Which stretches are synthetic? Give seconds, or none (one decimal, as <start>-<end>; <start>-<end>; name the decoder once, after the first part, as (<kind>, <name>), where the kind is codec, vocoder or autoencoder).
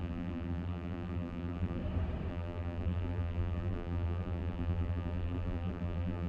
0.0-1.8 (vocoder, BigVGAN v2); 2.3-6.3